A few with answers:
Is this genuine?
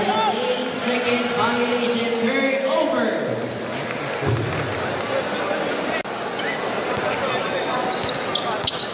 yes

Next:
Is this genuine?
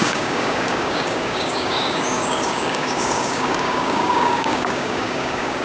no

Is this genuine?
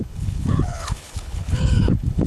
no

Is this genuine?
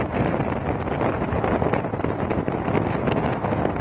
yes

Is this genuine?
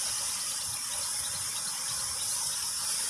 yes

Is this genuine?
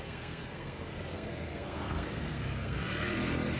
no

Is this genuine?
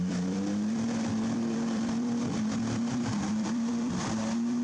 no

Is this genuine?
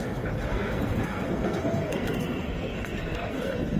no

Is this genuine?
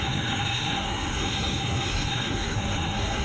no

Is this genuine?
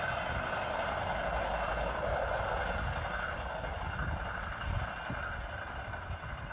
yes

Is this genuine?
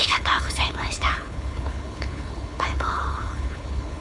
no